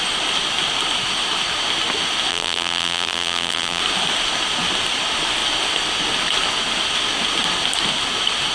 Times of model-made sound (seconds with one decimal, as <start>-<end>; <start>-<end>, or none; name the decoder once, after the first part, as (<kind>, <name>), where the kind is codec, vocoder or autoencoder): 2.3-3.8 (vocoder, BigVGAN v2)